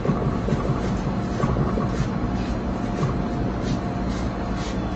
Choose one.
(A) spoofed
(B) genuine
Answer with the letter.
B